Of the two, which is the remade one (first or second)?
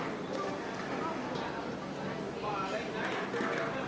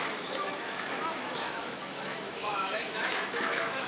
second